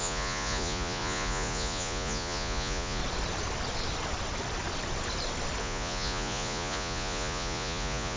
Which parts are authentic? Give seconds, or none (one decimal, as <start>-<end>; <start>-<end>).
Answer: 3.0-5.6